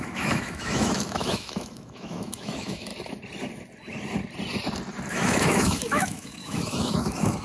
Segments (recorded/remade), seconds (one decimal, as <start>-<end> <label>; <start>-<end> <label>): 0.0-2.9 remade; 2.9-5.1 recorded; 5.1-7.4 remade